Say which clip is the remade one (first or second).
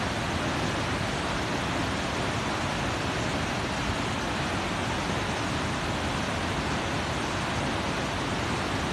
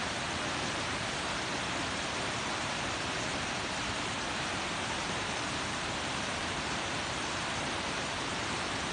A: second